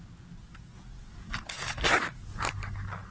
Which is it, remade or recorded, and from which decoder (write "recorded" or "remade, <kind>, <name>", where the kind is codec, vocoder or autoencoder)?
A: recorded